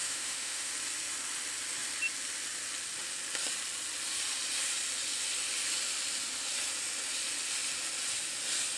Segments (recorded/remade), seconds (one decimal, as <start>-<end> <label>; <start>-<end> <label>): 0.0-0.7 remade; 0.7-8.8 recorded